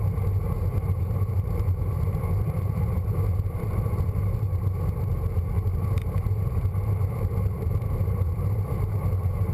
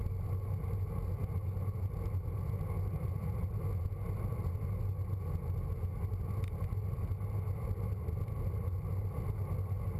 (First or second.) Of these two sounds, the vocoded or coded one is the first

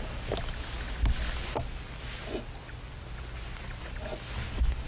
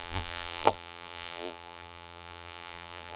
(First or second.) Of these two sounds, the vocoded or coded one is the second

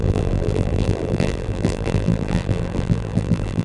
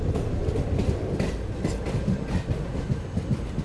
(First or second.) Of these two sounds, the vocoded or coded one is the first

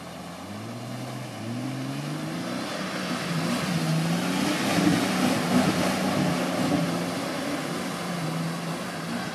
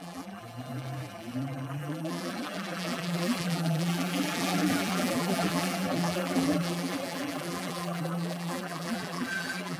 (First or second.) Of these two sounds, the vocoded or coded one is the second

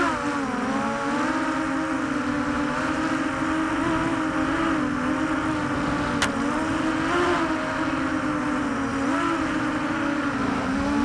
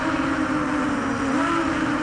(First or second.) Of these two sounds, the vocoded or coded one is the second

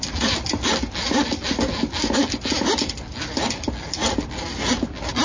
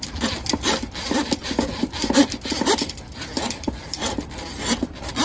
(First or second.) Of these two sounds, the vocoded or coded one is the second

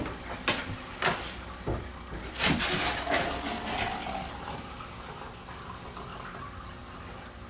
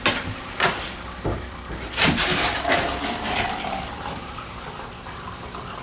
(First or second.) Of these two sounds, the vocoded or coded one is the second